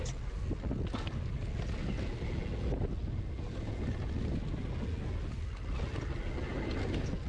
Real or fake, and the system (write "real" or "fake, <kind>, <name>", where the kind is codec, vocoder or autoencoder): real